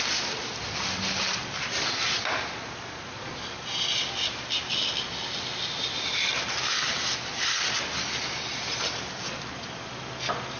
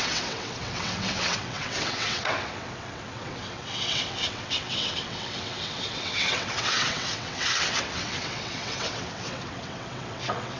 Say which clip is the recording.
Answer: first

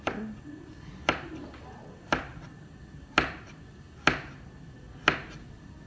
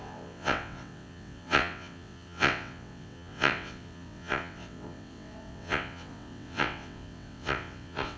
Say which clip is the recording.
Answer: first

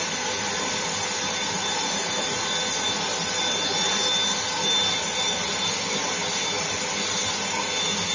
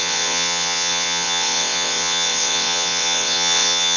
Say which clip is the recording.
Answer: first